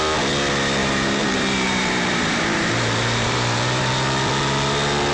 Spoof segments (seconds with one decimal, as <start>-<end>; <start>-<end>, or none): 0.8-3.9